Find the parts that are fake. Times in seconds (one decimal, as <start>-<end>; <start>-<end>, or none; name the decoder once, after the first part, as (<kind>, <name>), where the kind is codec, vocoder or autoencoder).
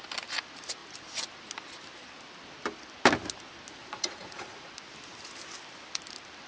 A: 3.8-4.7 (vocoder, Vocos)